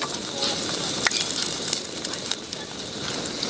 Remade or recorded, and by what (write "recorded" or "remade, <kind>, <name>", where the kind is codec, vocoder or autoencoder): recorded